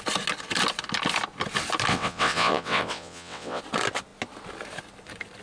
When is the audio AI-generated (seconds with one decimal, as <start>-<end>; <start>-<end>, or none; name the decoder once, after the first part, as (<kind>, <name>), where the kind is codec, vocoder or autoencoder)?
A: 1.9-3.6 (vocoder, WaveNeXt)